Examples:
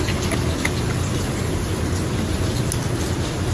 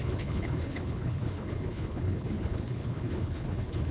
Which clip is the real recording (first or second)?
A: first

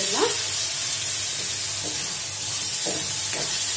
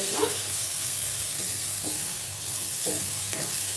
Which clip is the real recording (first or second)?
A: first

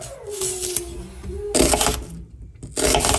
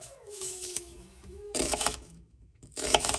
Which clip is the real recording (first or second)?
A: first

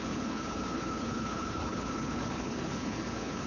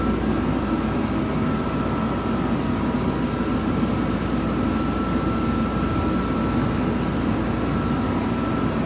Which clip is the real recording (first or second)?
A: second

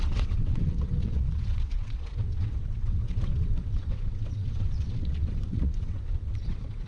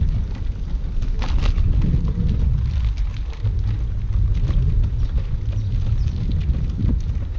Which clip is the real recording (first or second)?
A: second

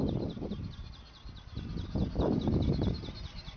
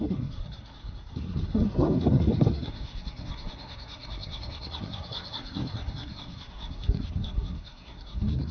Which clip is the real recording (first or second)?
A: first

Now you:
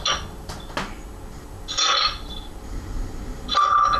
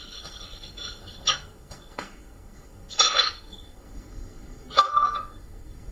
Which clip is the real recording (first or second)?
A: first